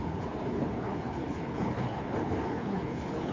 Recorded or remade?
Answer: remade